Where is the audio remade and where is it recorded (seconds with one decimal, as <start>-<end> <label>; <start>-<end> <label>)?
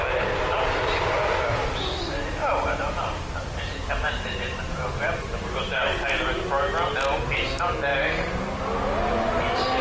0.0-2.5 recorded; 2.5-6.4 remade; 6.4-9.8 recorded